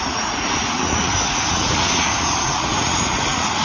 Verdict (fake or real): fake